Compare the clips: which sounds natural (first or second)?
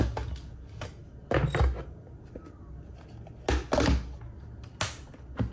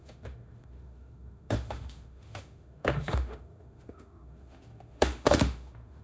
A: first